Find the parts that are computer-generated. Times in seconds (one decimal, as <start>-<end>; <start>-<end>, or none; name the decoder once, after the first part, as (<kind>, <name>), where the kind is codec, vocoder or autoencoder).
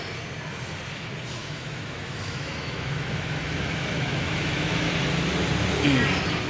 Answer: 1.4-4.9 (autoencoder, DAC-VAE)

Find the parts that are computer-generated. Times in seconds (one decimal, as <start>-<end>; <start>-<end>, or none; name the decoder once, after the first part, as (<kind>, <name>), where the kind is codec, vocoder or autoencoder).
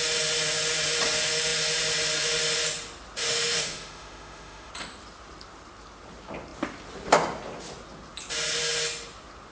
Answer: 3.2-4.7 (autoencoder, DAC-VAE)